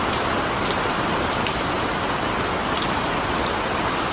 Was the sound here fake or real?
real